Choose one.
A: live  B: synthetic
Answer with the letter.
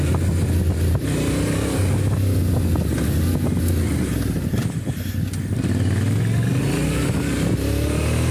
A